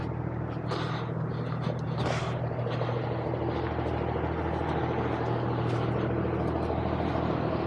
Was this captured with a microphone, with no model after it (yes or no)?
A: yes